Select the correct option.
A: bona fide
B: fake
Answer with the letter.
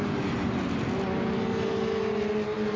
A